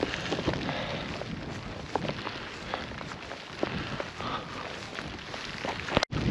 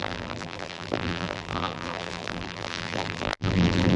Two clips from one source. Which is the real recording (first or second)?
first